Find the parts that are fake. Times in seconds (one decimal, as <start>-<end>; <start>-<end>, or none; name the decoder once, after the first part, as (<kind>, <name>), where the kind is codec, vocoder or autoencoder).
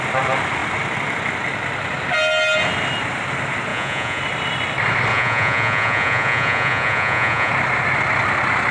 3.7-4.2 (vocoder, Vocos); 5.1-7.5